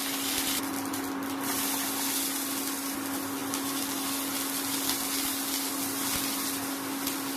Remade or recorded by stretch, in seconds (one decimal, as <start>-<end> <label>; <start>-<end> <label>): 0.0-7.4 recorded